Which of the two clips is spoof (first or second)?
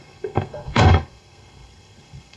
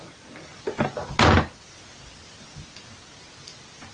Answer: first